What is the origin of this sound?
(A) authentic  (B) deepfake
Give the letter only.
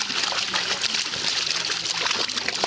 A